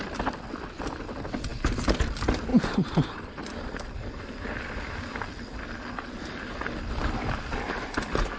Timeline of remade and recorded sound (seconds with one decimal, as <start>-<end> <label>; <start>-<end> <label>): 0.0-1.5 recorded; 1.5-2.0 remade; 2.0-2.5 recorded; 2.5-4.2 remade; 4.2-8.4 recorded